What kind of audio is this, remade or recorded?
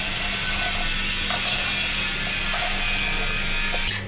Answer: recorded